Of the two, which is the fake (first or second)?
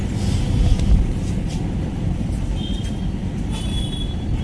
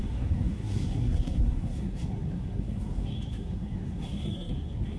second